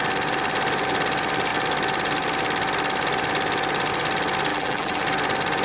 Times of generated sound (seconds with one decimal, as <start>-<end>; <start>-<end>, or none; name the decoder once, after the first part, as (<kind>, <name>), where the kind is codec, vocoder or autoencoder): 4.5-5.0 (vocoder, BigVGAN v2)